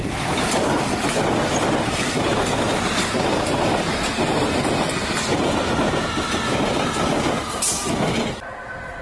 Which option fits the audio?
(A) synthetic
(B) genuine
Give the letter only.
B